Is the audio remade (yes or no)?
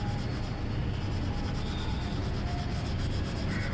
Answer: no